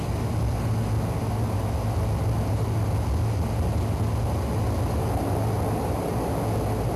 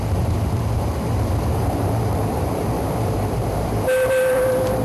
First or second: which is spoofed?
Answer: second